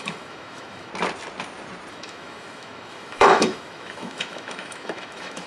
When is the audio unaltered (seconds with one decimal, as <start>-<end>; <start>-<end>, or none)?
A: 0.9-1.9